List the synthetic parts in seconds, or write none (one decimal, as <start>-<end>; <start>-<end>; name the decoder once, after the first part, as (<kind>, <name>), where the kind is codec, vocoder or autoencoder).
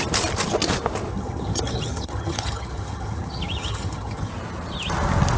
1.1-4.3 (vocoder, HiFi-GAN)